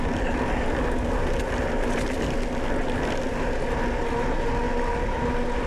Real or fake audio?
real